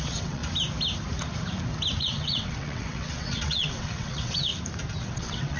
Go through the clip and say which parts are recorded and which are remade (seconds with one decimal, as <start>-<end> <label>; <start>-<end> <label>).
0.0-0.4 remade; 0.4-2.0 recorded; 2.0-4.5 remade; 4.5-5.0 recorded; 5.0-5.6 remade